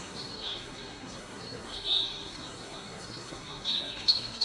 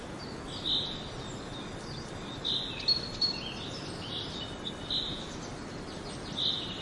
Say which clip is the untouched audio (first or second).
second